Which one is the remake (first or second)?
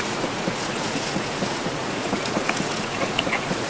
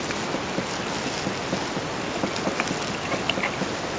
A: first